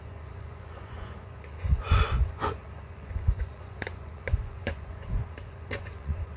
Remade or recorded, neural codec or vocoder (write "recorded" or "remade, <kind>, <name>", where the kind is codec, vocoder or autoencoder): remade, vocoder, Vocos